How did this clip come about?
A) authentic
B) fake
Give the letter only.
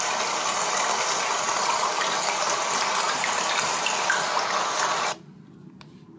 A